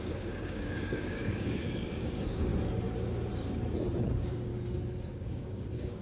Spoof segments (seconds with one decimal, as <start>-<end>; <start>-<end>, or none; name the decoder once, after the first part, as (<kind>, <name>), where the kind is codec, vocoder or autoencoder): 0.0-2.5 (codec, DAC); 4.0-4.5; 5.1-6.0